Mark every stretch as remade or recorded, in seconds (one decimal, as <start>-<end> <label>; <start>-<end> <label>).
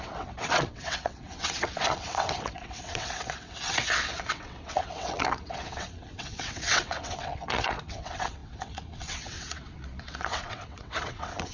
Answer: 0.0-11.5 remade